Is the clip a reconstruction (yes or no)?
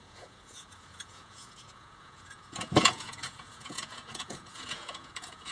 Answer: yes